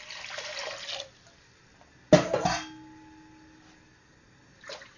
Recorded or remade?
recorded